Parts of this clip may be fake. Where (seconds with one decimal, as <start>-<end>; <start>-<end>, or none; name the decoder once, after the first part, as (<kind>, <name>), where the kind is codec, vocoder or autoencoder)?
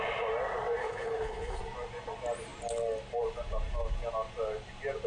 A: 0.8-1.6 (codec, HILCodec)